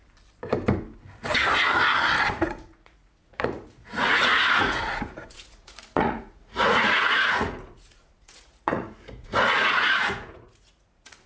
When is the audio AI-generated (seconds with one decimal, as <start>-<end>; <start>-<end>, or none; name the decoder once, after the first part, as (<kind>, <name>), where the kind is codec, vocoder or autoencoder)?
2.3-11.3 (vocoder, Vocos)